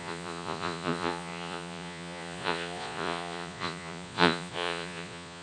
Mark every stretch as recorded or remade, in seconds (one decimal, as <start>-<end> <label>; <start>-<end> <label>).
0.0-5.4 remade